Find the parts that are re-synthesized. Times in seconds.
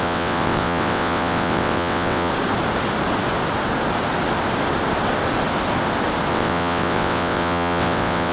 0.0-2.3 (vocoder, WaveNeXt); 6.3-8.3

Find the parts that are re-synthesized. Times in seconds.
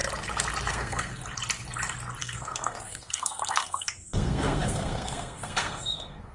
0.7-1.2 (codec, SNAC); 2.2-6.3